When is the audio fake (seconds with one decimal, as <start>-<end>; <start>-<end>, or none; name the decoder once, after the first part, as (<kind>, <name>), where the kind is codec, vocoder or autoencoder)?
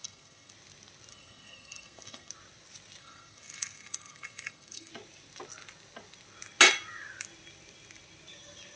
0.0-0.5 (codec, SNAC); 1.1-2.3; 3.0-4.9